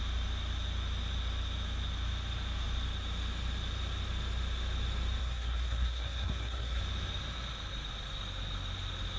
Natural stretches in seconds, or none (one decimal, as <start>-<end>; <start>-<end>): 0.0-5.2; 6.8-9.2